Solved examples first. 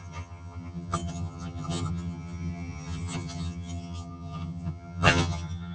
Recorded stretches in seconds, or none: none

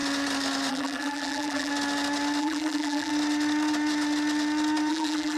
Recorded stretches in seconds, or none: 0.0-0.7; 1.7-2.4; 3.1-4.9

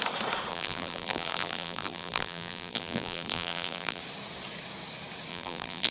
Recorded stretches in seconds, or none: 0.0-0.5; 4.0-5.3